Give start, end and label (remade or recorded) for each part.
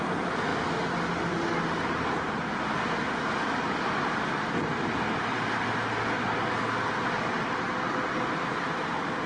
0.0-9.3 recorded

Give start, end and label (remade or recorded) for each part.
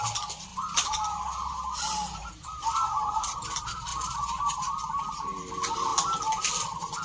0.0-0.5 recorded; 0.5-2.3 remade; 2.3-5.9 recorded; 5.9-6.5 remade; 6.5-7.0 recorded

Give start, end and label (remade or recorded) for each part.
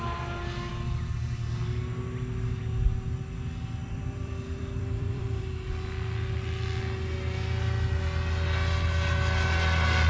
0.0-3.8 recorded; 3.8-5.4 remade; 5.4-10.1 recorded